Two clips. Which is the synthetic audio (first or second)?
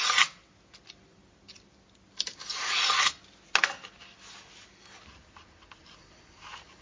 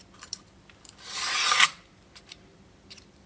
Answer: second